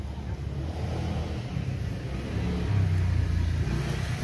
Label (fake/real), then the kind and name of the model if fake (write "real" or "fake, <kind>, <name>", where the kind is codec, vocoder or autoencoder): real